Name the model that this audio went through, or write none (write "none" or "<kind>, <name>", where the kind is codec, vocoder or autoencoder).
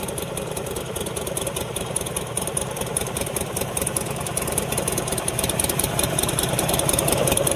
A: vocoder, BigVGAN v2